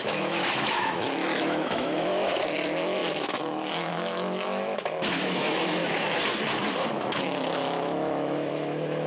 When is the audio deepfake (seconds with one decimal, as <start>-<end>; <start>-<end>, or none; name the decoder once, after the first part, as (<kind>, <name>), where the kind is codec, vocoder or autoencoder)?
0.0-5.8 (autoencoder, DAC-VAE); 6.9-9.1